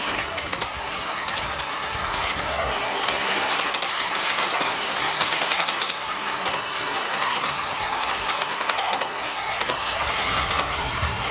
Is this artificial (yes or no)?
yes